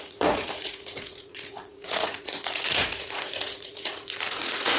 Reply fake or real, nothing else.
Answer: fake